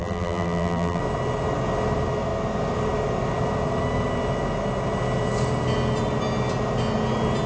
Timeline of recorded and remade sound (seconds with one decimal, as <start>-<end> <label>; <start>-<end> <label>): 0.0-1.0 remade; 1.0-7.5 recorded